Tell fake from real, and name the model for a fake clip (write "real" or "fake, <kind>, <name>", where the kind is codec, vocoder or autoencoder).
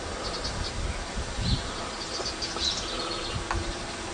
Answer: real